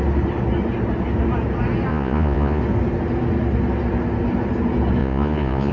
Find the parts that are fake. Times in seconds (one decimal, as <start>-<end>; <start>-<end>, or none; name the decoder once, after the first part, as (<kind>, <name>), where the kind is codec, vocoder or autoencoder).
1.9-2.6 (vocoder, Vocos); 5.0-5.7